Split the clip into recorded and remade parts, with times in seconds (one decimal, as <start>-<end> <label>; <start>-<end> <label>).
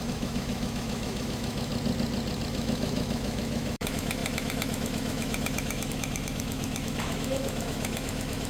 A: 0.0-1.7 remade; 1.7-2.5 recorded; 2.5-8.5 remade